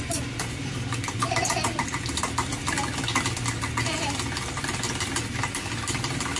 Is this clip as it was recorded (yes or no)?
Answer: yes